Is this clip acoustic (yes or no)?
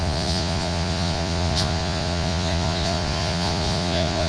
no